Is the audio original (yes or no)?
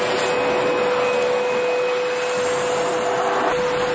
yes